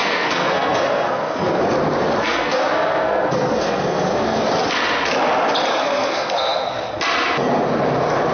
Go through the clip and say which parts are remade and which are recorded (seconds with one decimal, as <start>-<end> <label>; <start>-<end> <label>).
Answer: 0.0-1.6 remade; 1.6-2.2 recorded; 2.2-4.4 remade; 4.4-5.7 recorded; 5.7-6.9 remade; 6.9-8.3 recorded